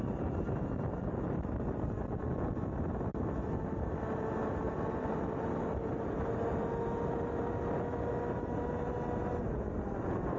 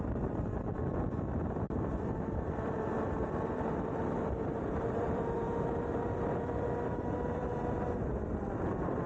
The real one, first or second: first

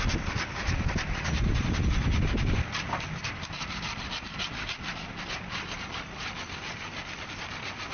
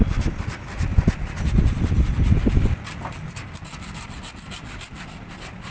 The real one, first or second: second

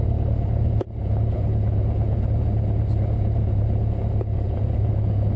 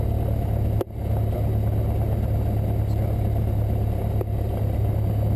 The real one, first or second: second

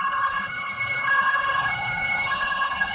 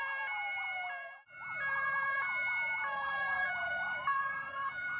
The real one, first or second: second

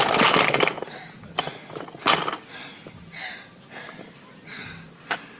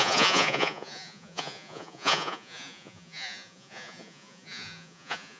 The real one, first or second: first